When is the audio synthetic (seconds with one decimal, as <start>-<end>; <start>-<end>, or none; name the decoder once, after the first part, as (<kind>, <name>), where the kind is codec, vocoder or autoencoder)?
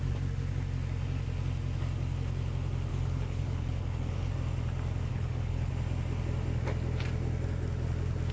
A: 2.9-4.3 (codec, HILCodec); 5.1-5.7